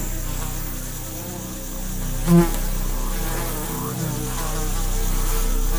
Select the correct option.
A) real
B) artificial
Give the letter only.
A